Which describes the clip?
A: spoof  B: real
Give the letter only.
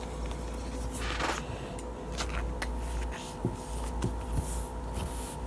B